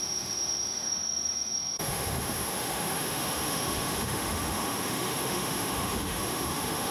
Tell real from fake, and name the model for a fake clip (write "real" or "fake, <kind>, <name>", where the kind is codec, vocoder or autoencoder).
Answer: fake, autoencoder, DAC-VAE